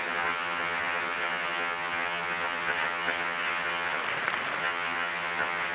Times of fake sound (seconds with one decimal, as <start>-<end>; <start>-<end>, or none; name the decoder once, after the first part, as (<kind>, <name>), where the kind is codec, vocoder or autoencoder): 0.0-4.0 (vocoder, HiFi-GAN); 4.6-5.7